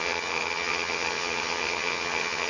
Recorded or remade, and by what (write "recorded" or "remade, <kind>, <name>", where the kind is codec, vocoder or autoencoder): remade, vocoder, HiFi-GAN